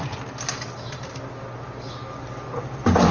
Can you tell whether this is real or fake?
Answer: real